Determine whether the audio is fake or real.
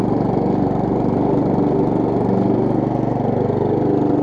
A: real